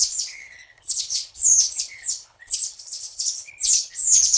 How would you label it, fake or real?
fake